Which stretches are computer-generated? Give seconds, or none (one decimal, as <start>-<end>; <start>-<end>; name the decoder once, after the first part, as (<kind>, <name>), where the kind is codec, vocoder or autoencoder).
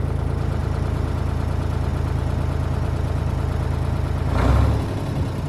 0.6-1.1 (vocoder, BigVGAN v2)